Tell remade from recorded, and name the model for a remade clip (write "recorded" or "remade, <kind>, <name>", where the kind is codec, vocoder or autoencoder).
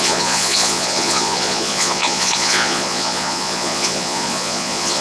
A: remade, vocoder, Vocos